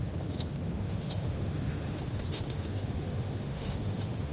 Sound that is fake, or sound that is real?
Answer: fake